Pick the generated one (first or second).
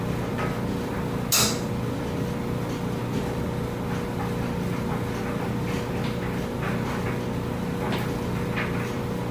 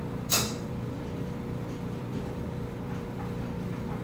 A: second